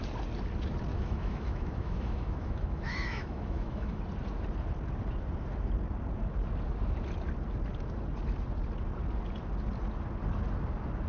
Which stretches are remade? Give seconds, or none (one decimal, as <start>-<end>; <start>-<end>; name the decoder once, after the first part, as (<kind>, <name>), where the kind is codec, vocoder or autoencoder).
0.9-4.0 (autoencoder, DAC-VAE)